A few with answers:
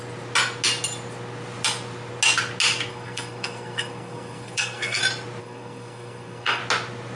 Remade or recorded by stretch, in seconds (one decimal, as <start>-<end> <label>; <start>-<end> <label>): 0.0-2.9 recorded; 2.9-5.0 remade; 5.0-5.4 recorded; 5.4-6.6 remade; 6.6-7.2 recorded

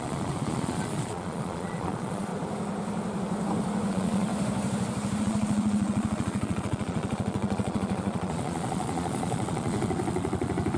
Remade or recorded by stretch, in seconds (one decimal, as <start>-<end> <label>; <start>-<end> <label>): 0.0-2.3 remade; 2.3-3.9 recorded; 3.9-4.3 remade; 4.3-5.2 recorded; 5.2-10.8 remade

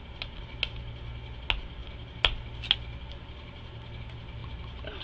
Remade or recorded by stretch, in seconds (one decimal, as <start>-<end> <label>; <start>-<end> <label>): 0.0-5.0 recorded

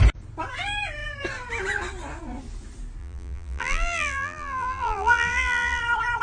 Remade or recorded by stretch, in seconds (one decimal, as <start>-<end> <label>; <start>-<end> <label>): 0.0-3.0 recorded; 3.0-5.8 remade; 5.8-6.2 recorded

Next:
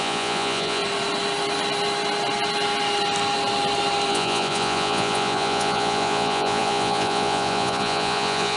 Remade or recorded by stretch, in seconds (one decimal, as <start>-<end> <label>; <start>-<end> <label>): 0.0-0.8 remade; 0.8-4.1 recorded; 4.1-8.6 remade

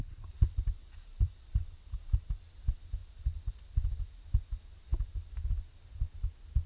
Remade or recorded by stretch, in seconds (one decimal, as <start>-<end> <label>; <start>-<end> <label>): 0.0-0.8 recorded; 0.8-2.4 remade; 2.4-6.7 recorded

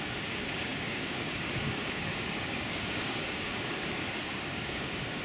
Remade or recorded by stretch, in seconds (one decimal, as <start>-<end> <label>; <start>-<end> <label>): 0.0-5.2 remade

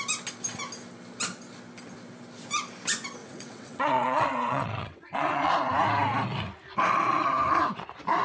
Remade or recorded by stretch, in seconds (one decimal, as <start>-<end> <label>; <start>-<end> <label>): 0.0-3.2 recorded; 3.2-5.5 remade; 5.5-8.2 recorded